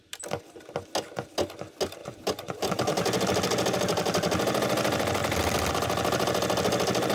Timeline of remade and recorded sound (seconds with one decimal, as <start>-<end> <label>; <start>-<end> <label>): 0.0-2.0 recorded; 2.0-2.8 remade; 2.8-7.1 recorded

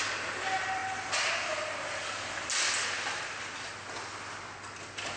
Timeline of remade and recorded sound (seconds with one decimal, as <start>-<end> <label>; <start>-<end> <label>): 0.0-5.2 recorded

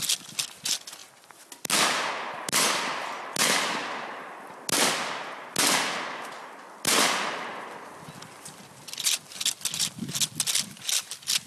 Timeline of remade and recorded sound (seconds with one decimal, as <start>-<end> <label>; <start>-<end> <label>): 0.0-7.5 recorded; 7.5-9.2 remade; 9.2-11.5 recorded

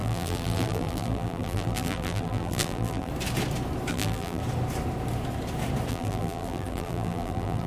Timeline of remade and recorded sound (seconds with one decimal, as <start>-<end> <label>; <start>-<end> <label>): 0.0-3.1 remade; 3.1-3.9 recorded; 3.9-4.4 remade; 4.4-5.9 recorded; 5.9-7.7 remade

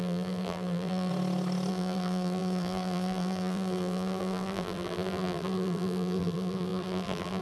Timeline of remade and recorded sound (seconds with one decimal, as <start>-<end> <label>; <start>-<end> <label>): 0.0-1.1 remade; 1.1-1.7 recorded; 1.7-7.4 remade

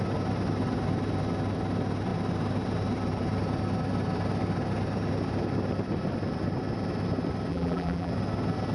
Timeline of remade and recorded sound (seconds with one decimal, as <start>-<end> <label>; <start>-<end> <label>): 0.0-7.5 recorded; 7.5-8.1 remade; 8.1-8.7 recorded

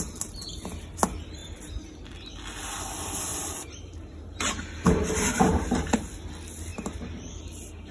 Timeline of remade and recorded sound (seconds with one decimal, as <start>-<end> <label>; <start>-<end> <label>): 0.0-3.3 recorded; 3.3-6.0 remade; 6.0-6.7 recorded; 6.7-7.3 remade; 7.3-7.9 recorded

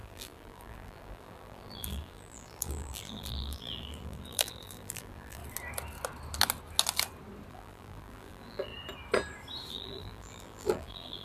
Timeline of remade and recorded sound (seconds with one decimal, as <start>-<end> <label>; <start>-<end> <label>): 0.0-5.4 remade; 5.4-7.5 recorded; 7.5-8.7 remade; 8.7-9.7 recorded; 9.7-11.2 remade